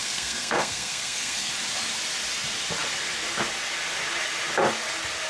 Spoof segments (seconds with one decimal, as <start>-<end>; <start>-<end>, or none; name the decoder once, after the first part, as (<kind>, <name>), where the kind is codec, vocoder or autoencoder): 0.0-1.5 (codec, SNAC)